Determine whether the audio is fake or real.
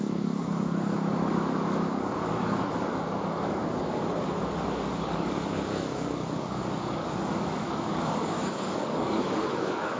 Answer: fake